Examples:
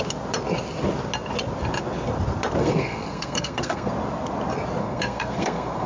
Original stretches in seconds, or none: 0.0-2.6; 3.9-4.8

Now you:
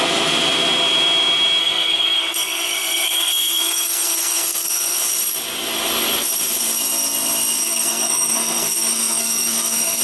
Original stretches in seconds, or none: 0.0-1.6; 5.0-7.6